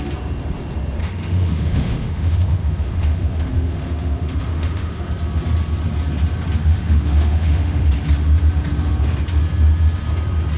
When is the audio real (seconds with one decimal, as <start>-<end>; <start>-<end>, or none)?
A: 0.0-1.0; 5.1-6.6; 7.9-10.6